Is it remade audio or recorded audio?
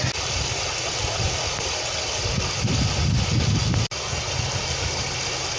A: recorded